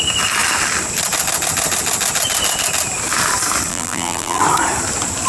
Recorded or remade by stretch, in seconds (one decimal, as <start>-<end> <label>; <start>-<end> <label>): 0.0-3.7 recorded; 3.7-4.4 remade; 4.4-5.3 recorded